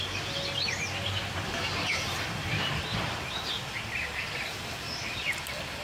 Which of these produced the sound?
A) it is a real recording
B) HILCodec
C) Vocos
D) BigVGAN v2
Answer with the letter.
A